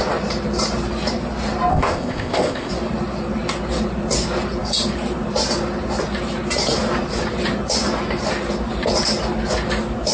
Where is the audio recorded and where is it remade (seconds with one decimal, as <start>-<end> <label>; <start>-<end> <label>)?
0.0-1.7 recorded; 1.7-2.7 remade; 2.7-10.1 recorded